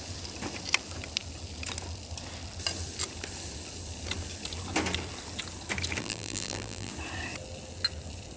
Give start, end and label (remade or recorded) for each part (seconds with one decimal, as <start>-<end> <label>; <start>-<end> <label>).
0.0-6.0 recorded; 6.0-6.9 remade; 6.9-8.4 recorded